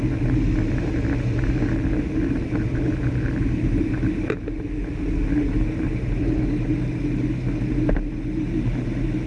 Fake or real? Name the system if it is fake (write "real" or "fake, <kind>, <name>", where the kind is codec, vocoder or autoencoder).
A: real